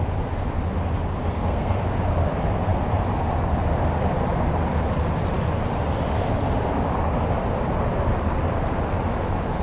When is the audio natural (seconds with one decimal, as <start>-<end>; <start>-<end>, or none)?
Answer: 0.0-1.2; 1.8-9.6